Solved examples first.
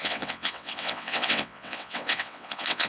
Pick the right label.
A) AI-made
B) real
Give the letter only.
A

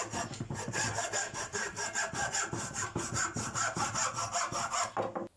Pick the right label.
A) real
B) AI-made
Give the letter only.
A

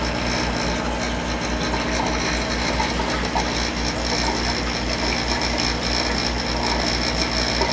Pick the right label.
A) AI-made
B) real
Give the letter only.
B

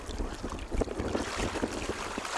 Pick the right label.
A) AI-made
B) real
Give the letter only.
B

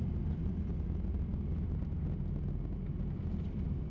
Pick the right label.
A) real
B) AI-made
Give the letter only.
A